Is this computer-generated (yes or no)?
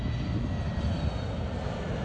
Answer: no